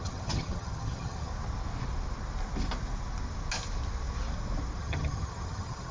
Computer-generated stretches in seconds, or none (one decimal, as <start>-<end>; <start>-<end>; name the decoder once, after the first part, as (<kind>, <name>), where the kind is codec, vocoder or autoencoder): 0.0-1.3 (vocoder, HiFi-GAN); 4.8-5.9